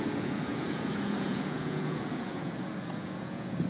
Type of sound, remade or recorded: remade